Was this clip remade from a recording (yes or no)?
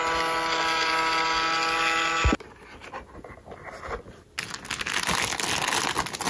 no